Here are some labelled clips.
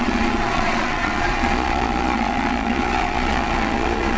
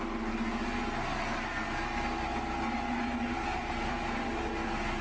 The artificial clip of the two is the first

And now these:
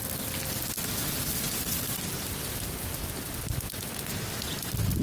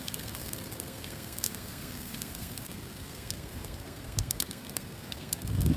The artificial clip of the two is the second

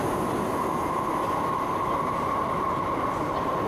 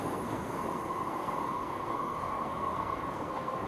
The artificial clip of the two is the second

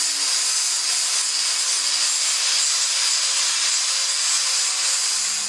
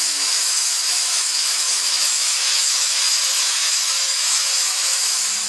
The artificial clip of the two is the second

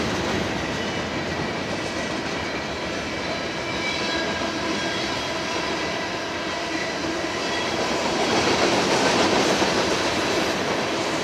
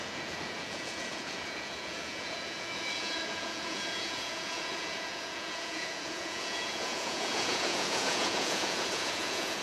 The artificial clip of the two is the second